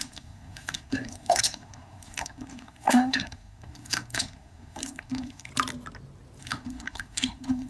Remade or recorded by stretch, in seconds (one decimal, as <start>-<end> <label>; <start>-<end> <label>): 0.0-5.5 remade; 5.5-6.4 recorded; 6.4-7.7 remade